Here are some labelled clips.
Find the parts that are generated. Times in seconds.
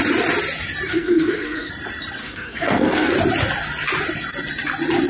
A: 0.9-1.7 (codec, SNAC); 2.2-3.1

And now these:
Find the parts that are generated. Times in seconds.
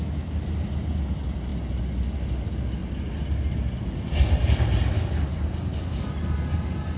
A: none